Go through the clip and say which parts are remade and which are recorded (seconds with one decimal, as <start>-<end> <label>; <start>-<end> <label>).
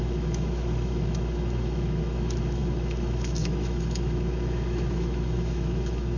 0.0-6.2 remade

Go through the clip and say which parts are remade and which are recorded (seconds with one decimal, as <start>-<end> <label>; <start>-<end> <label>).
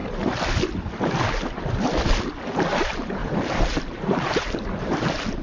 0.0-2.4 recorded; 2.4-5.4 remade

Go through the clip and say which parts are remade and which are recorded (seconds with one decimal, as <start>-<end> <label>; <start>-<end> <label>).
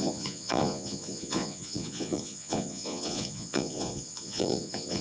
0.0-5.0 remade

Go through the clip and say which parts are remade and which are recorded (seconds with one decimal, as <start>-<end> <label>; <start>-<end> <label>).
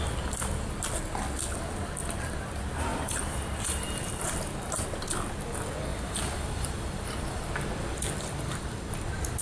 0.0-2.9 recorded; 2.9-4.3 remade; 4.3-5.9 recorded; 5.9-7.5 remade; 7.5-9.4 recorded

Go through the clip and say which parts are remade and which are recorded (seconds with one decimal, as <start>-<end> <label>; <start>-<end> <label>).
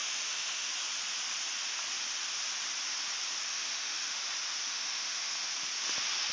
0.0-0.7 remade; 0.7-3.5 recorded; 3.5-4.2 remade; 4.2-4.7 recorded; 4.7-5.5 remade; 5.5-6.3 recorded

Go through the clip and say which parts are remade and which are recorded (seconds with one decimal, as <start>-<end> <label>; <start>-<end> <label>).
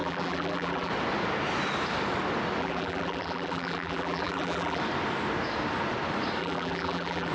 0.0-0.9 remade; 0.9-2.6 recorded; 2.6-4.8 remade; 4.8-6.4 recorded; 6.4-7.3 remade